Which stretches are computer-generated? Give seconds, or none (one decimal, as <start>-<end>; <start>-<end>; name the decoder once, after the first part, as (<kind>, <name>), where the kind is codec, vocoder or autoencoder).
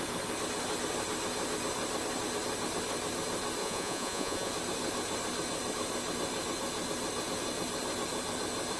3.6-4.5 (vocoder, Vocos)